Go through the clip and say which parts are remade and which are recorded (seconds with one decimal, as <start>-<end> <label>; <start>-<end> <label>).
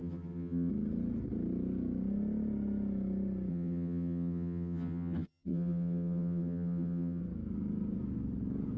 0.0-0.7 remade; 0.7-3.5 recorded; 3.5-7.2 remade; 7.2-8.8 recorded